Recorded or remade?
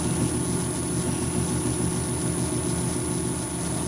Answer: recorded